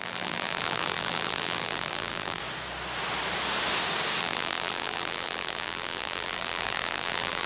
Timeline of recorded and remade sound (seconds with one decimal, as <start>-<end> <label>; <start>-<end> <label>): 0.0-2.4 remade; 2.4-4.2 recorded; 4.2-7.5 remade